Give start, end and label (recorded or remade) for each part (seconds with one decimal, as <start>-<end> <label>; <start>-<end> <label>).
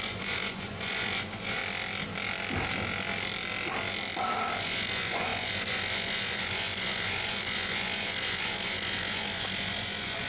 0.0-1.6 remade; 1.6-4.6 recorded; 4.6-10.3 remade